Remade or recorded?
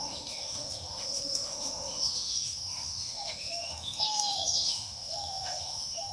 remade